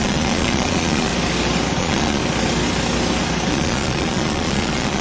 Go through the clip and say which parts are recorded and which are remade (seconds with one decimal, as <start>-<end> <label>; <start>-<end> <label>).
0.0-1.1 remade; 1.1-1.8 recorded; 1.8-2.2 remade; 2.2-3.5 recorded; 3.5-5.0 remade